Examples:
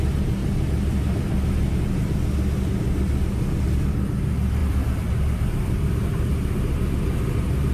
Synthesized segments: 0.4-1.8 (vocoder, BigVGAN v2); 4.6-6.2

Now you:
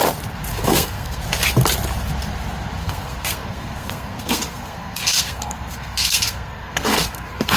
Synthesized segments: 0.5-1.2 (codec, SNAC); 2.8-7.6